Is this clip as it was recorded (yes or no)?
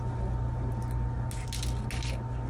yes